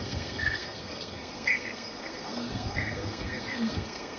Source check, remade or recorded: remade